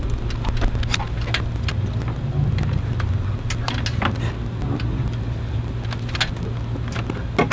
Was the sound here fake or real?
real